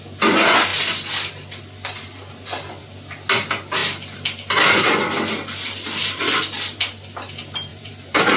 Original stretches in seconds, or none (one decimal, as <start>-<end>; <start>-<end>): 0.0-7.7